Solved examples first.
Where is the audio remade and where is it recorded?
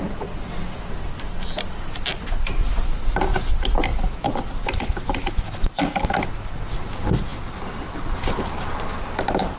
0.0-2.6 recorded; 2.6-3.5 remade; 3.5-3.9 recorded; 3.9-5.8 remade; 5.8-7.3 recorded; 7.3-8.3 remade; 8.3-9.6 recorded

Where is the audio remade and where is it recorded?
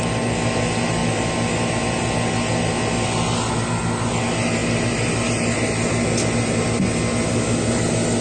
0.0-8.2 recorded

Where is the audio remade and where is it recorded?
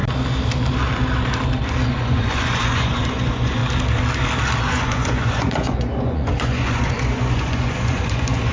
0.0-1.9 recorded; 1.9-3.6 remade; 3.6-4.6 recorded; 4.6-8.5 remade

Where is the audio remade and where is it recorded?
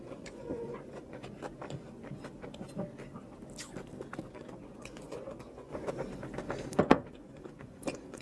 0.0-1.2 remade; 1.2-4.3 recorded; 4.3-5.7 remade; 5.7-6.8 recorded; 6.8-8.2 remade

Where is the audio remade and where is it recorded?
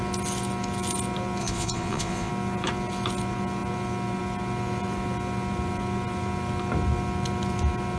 0.0-1.4 recorded; 1.4-2.3 remade; 2.3-8.0 recorded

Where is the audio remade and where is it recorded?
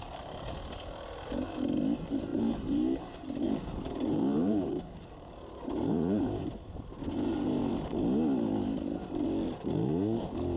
0.0-2.3 recorded; 2.3-7.6 remade; 7.6-10.6 recorded